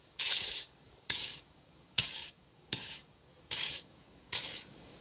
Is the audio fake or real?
fake